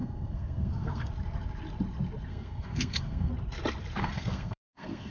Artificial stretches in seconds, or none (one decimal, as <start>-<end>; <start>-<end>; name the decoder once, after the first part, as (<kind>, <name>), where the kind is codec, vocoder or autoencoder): 0.0-1.1 (codec, SNAC); 2.3-3.3; 4.0-5.1